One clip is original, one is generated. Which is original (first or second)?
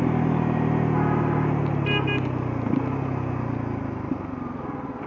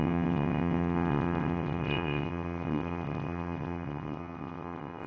first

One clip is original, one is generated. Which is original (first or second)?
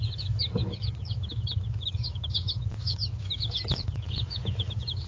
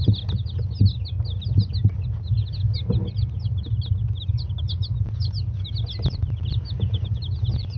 second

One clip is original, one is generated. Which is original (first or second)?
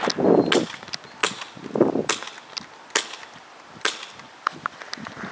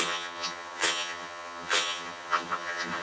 first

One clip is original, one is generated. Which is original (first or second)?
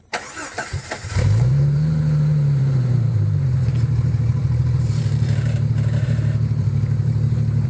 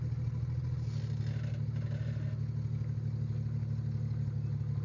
second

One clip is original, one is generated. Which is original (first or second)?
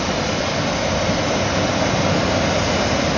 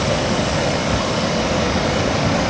first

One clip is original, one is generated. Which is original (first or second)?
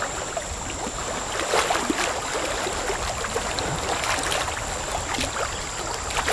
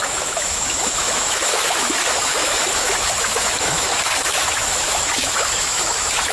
first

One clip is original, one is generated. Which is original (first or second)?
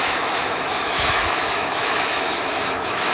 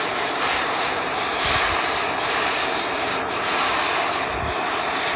second